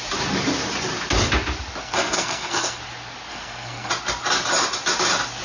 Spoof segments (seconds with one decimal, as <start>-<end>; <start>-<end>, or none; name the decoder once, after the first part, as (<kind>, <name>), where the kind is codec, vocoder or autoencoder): 1.8-2.8 (codec, SNAC); 3.3-3.9